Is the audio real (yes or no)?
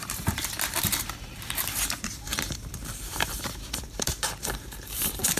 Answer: no